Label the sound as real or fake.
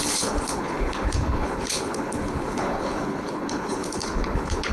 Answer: fake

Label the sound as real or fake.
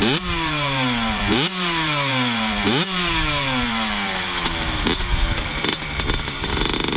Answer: fake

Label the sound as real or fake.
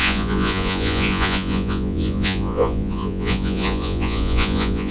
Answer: fake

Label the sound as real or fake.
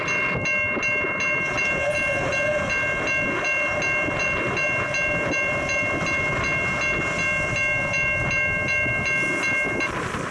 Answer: real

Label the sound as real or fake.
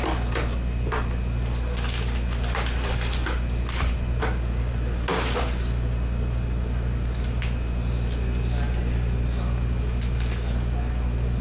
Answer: real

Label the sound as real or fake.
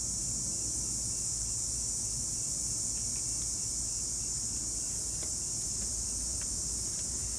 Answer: real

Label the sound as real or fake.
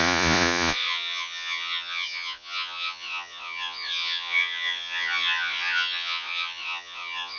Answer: fake